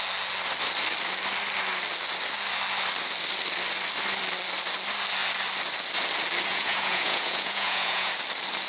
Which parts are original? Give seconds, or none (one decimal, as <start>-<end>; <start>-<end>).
0.0-6.5; 8.1-8.7